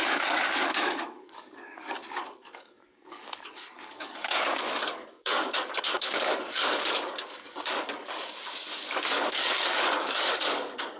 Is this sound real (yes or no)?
no